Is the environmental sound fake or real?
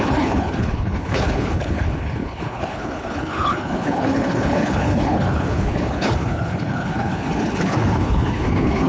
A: fake